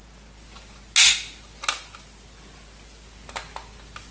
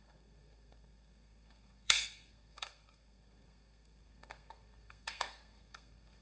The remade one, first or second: second